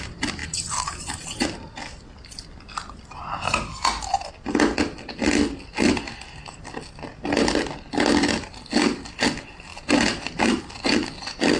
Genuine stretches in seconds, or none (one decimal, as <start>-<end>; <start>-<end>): 0.0-11.6